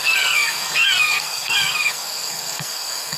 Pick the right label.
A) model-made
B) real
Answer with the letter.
A